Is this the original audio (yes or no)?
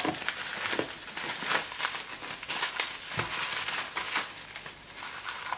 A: yes